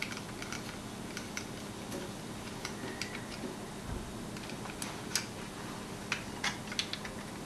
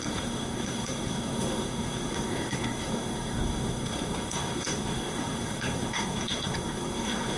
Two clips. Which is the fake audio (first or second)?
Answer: second